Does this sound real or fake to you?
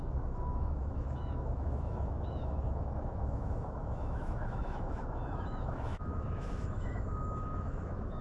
fake